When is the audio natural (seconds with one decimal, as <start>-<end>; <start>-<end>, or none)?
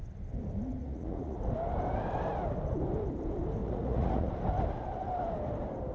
0.0-0.8; 1.4-3.6; 4.3-5.9